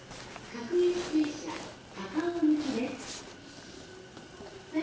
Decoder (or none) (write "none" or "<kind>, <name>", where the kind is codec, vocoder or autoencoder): none